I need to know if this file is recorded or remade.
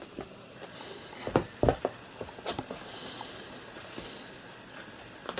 recorded